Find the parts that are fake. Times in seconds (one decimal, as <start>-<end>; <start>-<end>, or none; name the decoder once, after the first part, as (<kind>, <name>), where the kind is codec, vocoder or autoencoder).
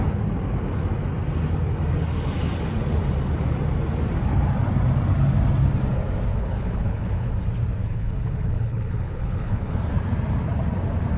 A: 6.3-7.3 (codec, HILCodec); 7.8-9.8